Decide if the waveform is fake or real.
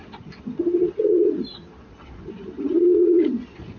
fake